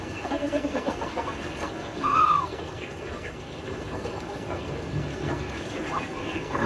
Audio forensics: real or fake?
fake